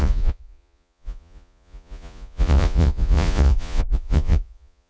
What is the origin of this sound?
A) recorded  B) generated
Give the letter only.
B